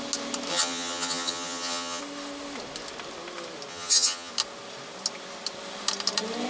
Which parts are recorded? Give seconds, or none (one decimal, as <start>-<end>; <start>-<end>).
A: 0.0-0.5; 2.0-3.7; 4.3-6.5